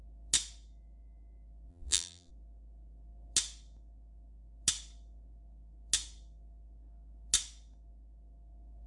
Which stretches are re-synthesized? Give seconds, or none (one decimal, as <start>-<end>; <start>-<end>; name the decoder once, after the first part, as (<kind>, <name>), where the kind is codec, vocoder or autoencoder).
1.7-2.3 (vocoder, BigVGAN v2)